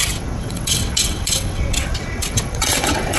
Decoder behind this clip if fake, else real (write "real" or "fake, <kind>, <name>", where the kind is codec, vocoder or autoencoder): fake, vocoder, WaveNeXt